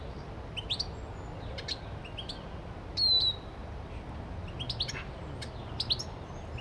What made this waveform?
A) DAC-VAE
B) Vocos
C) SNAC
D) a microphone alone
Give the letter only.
D